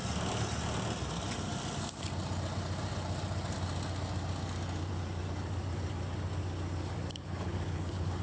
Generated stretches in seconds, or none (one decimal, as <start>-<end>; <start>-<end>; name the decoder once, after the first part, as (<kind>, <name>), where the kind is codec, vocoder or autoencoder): 7.2-8.2 (codec, HILCodec)